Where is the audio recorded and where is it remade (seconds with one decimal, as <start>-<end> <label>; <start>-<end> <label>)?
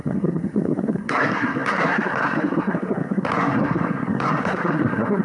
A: 0.0-5.2 remade